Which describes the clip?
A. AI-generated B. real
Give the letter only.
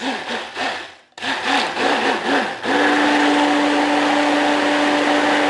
B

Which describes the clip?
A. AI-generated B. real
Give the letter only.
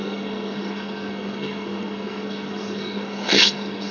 A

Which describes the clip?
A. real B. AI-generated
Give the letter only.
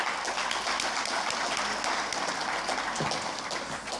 A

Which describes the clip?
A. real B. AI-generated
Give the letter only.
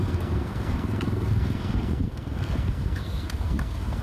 B